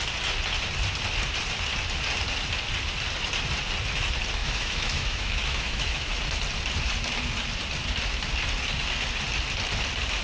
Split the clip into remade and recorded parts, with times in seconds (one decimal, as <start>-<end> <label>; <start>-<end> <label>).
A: 0.0-4.4 recorded; 4.4-6.2 remade; 6.2-10.2 recorded